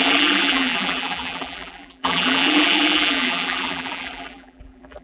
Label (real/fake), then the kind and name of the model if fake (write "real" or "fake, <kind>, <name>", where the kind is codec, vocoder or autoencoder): fake, vocoder, BigVGAN v2